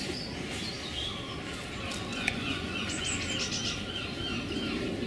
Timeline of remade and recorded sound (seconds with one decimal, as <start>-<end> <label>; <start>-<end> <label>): 0.0-2.1 recorded; 2.1-3.2 remade; 3.2-5.1 recorded